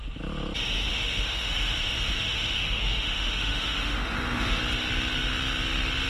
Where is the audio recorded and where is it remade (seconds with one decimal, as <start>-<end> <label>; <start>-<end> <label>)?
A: 0.0-0.9 recorded; 0.9-4.6 remade; 4.6-6.1 recorded